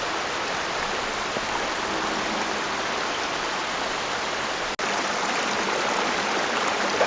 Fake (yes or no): no